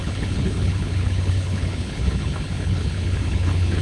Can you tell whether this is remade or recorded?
remade